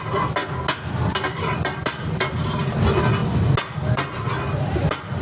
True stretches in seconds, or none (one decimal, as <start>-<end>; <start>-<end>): 0.0-1.8; 2.6-5.2